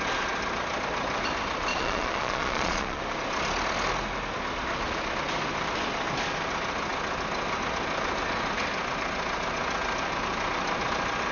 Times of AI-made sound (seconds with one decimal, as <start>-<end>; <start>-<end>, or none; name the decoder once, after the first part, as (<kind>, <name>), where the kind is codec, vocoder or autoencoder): 1.7-3.0 (vocoder, Vocos)